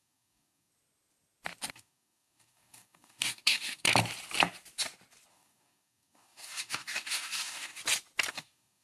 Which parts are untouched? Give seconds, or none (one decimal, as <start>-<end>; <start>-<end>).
0.7-1.7; 3.9-5.3; 7.8-8.3